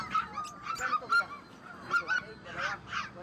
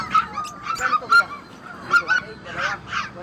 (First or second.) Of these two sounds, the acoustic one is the first